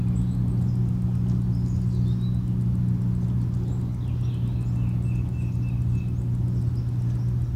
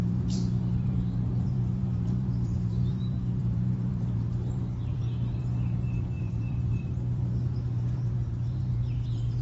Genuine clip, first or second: first